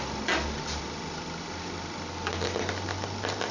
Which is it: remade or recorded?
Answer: recorded